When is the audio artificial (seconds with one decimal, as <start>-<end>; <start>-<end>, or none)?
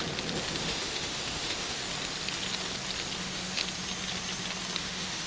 0.6-1.8; 3.2-3.6; 4.8-5.3